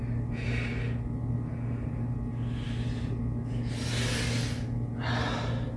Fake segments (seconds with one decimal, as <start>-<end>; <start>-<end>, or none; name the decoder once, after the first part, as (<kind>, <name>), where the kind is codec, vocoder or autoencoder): none